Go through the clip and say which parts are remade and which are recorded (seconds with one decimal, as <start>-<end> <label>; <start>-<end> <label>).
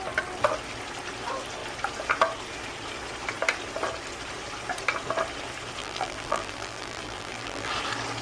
0.0-5.8 recorded; 5.8-7.7 remade; 7.7-8.2 recorded